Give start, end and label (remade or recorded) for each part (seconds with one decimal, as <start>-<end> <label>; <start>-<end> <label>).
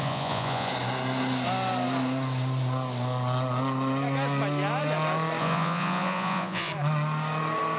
0.0-0.7 remade; 0.7-5.4 recorded; 5.4-6.7 remade; 6.7-7.8 recorded